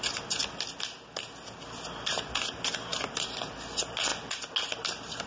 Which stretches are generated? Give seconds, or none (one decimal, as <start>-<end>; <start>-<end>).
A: none